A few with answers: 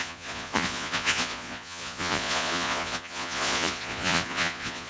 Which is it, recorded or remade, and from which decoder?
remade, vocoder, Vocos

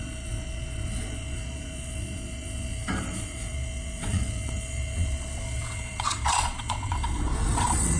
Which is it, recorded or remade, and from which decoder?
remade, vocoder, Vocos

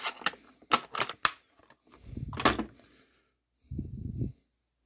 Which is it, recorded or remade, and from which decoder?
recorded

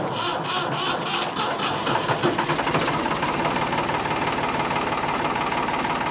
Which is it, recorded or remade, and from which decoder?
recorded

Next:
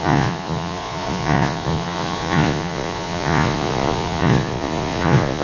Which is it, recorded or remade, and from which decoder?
remade, vocoder, Vocos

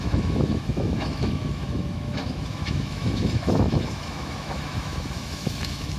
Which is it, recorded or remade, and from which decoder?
remade, autoencoder, DAC-VAE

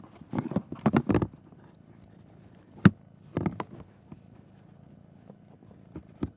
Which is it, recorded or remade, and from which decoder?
recorded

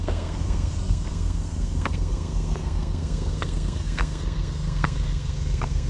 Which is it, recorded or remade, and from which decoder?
remade, codec, SNAC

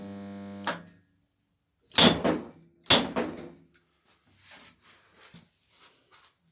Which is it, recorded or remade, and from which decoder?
recorded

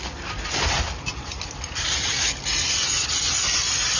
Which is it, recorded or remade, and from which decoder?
recorded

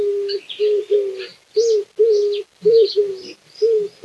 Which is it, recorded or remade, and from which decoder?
recorded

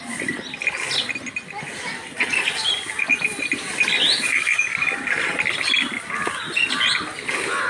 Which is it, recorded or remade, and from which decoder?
recorded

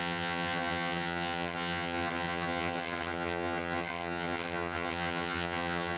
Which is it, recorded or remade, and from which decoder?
remade, vocoder, HiFi-GAN